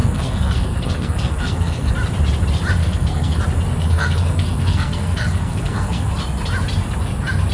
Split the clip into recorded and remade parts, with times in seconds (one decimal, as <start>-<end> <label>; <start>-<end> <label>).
0.0-1.9 remade; 1.9-2.8 recorded; 2.8-3.4 remade; 3.4-3.8 recorded; 3.8-6.1 remade; 6.1-7.5 recorded